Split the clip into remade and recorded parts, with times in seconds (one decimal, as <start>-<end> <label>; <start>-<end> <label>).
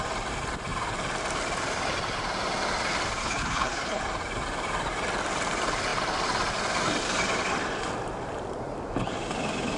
0.0-3.2 recorded; 3.2-4.0 remade; 4.0-9.8 recorded